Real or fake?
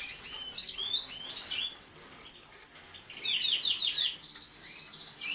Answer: real